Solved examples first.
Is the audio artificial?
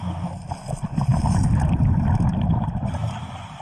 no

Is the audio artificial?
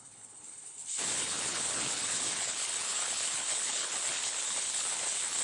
yes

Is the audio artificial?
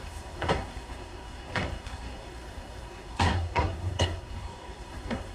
yes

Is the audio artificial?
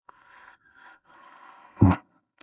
yes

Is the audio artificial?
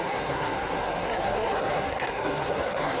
yes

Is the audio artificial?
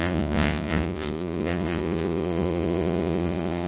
yes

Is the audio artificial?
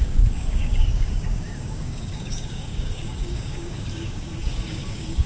yes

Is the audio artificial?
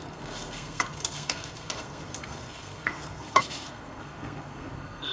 yes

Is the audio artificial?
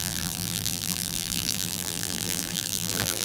yes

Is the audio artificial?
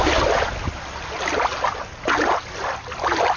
no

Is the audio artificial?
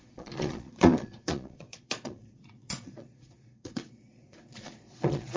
yes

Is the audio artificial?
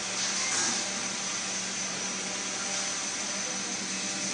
no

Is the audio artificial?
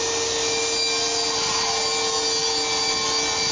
no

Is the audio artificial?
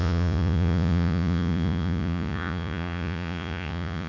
yes